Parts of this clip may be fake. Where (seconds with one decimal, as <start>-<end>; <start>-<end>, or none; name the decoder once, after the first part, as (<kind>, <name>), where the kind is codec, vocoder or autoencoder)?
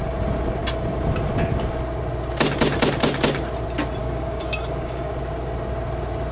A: 4.0-5.1 (codec, DAC)